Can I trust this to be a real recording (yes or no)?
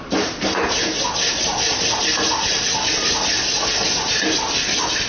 yes